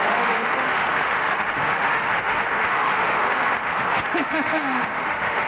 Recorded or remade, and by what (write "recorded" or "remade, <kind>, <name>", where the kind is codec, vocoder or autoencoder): remade, autoencoder, DAC-VAE